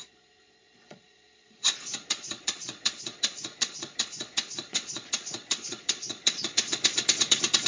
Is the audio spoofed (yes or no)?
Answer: yes